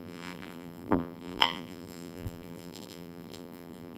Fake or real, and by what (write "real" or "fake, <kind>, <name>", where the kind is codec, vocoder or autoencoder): fake, vocoder, BigVGAN v2